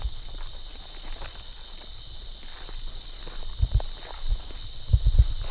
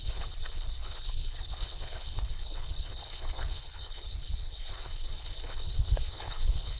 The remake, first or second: second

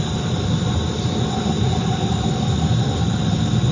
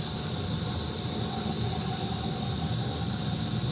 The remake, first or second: first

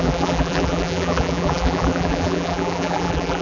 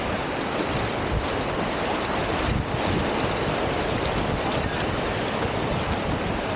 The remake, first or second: first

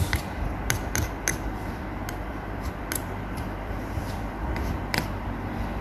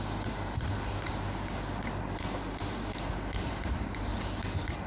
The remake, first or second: first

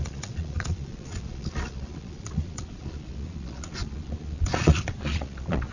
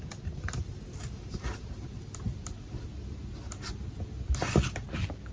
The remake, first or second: first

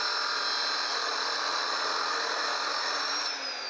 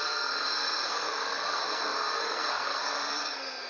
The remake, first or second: second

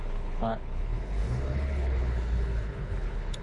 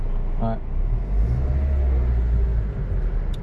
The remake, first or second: first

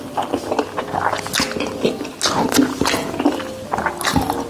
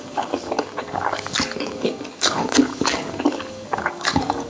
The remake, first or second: second